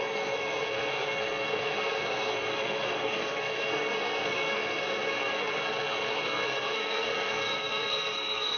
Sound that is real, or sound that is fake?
fake